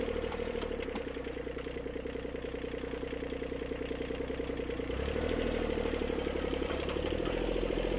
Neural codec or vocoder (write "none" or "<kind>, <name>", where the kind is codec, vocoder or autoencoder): vocoder, BigVGAN v2